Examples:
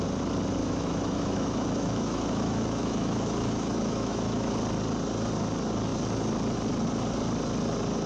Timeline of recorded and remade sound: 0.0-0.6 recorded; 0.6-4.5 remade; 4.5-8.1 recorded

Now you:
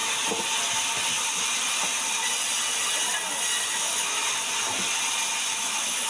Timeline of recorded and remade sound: 0.0-3.7 recorded; 3.7-4.2 remade; 4.2-5.5 recorded; 5.5-6.1 remade

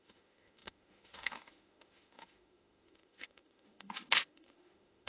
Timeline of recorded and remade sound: 0.0-5.1 remade

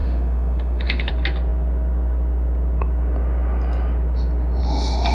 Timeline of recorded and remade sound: 0.0-1.1 remade; 1.1-5.1 recorded